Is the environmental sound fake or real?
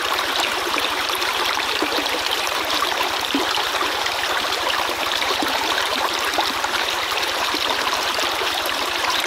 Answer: fake